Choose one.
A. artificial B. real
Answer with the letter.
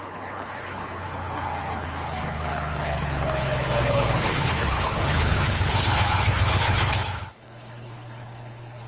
A